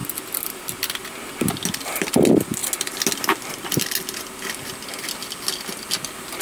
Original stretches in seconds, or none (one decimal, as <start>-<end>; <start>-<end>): 0.0-6.4